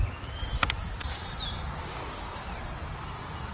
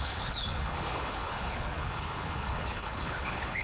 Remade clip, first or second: second